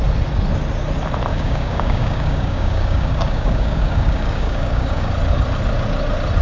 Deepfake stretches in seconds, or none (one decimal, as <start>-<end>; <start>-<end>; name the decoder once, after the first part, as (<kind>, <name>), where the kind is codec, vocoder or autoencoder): 1.3-5.1 (codec, DAC)